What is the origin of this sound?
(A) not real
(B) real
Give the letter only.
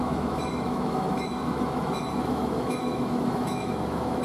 A